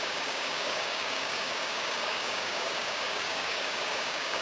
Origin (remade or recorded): remade